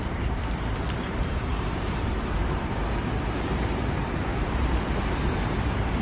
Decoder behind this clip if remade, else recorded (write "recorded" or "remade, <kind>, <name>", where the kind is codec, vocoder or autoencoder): remade, vocoder, BigVGAN v2